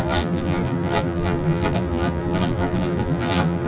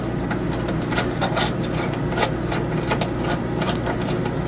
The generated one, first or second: first